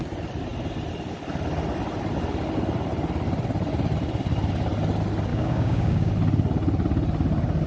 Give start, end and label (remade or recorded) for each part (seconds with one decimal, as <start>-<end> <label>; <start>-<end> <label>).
0.0-5.3 recorded; 5.3-6.1 remade; 6.1-7.7 recorded